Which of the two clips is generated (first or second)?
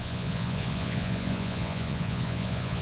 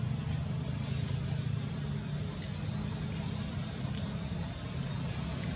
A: first